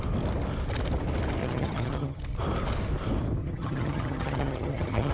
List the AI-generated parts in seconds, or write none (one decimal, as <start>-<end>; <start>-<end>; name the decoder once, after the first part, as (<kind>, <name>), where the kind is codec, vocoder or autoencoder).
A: 1.4-2.2 (vocoder, HiFi-GAN); 3.4-5.1